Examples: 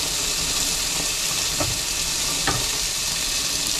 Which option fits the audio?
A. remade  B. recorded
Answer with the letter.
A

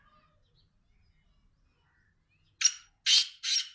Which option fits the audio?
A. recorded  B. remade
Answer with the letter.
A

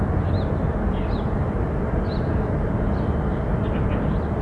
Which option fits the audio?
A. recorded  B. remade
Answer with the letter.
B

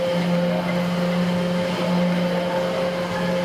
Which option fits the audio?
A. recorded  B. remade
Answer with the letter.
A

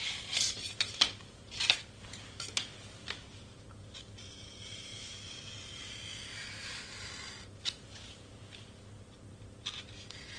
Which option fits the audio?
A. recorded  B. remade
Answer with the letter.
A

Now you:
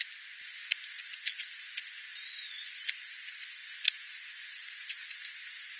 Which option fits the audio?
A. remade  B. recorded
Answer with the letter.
B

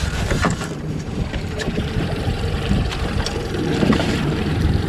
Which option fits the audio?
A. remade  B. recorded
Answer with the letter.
A